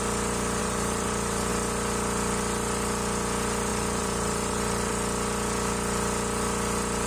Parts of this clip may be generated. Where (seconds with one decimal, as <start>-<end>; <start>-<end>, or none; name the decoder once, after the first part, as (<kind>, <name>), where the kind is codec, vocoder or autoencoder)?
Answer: 0.6-1.5 (vocoder, BigVGAN v2); 3.7-4.9